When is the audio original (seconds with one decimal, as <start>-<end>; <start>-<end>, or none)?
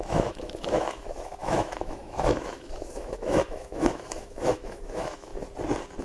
5.3-6.0